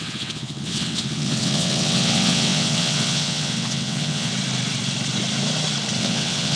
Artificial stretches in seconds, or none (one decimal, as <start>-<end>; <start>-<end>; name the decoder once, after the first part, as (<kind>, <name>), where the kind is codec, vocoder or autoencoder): 0.0-4.3 (vocoder, WaveNeXt); 6.0-6.6